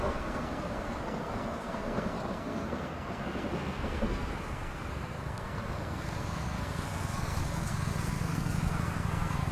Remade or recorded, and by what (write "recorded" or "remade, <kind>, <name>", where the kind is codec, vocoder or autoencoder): remade, codec, SNAC